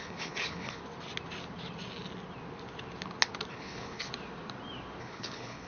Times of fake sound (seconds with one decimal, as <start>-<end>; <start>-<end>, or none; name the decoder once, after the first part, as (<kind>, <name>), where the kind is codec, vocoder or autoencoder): 0.0-0.8 (codec, HILCodec); 3.5-4.1; 5.0-5.7